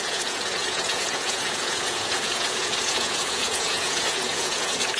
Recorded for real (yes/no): no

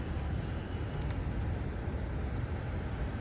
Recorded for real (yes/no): yes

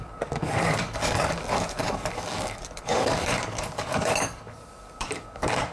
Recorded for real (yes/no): no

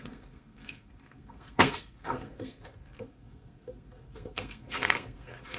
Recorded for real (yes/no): no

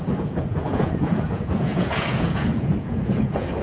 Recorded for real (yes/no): no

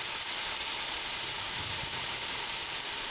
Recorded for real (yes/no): yes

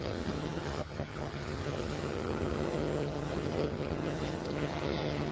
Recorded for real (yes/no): no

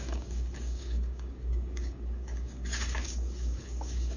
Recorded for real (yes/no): no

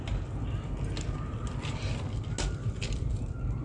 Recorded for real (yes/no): yes